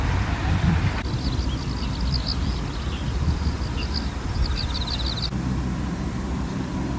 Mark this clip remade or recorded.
recorded